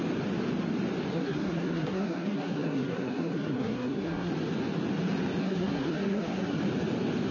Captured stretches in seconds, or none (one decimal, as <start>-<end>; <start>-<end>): 0.0-1.1; 4.3-5.4; 6.6-7.3